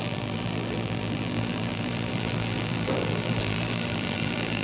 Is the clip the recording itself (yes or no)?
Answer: no